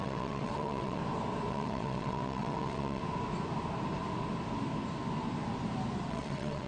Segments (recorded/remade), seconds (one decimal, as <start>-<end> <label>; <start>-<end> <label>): 0.0-1.0 remade; 1.0-1.5 recorded; 1.5-3.0 remade; 3.0-6.1 recorded; 6.1-6.7 remade